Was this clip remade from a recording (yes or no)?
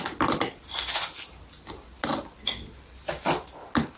no